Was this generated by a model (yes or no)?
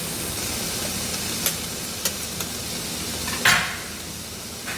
no